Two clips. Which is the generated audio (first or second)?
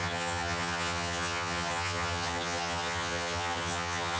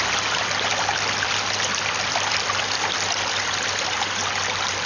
first